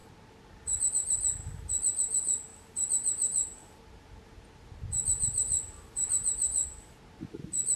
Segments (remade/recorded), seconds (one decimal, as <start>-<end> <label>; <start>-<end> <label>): 0.0-7.8 recorded